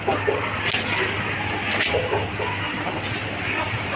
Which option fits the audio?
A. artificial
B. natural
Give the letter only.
B